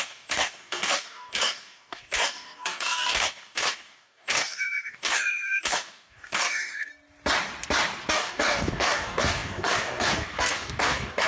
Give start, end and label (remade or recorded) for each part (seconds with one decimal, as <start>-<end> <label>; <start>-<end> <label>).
0.0-6.9 remade; 6.9-8.1 recorded; 8.1-11.3 remade